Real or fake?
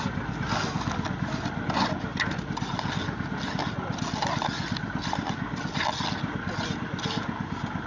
real